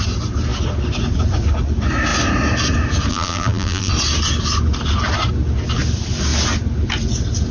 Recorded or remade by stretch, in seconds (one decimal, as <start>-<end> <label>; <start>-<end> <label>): 0.0-3.1 recorded; 3.1-3.9 remade; 3.9-7.5 recorded